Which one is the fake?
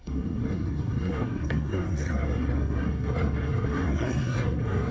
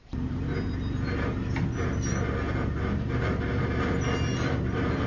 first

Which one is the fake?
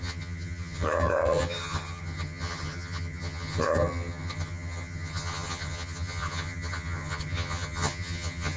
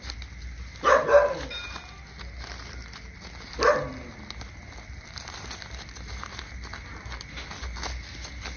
first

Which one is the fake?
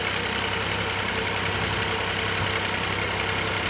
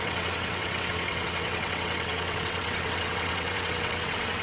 second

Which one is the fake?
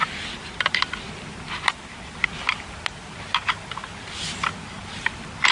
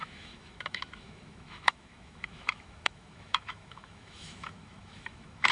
second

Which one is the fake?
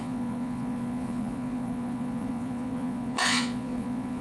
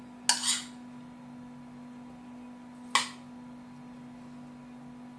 first